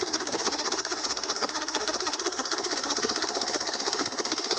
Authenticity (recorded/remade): remade